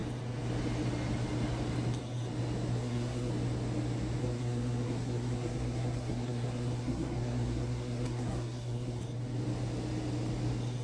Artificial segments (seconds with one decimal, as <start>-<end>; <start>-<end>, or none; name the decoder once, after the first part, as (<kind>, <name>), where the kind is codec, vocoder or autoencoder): 2.7-3.3 (codec, SNAC); 4.2-9.0